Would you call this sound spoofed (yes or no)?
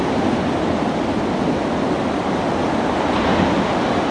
no